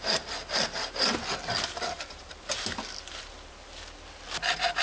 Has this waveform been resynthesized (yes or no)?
yes